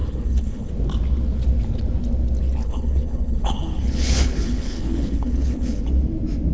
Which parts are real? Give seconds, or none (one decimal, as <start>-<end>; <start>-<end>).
0.7-2.6; 5.8-6.5